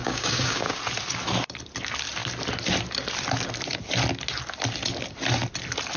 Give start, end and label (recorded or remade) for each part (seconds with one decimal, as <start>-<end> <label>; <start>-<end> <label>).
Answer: 0.0-0.8 remade; 0.8-6.0 recorded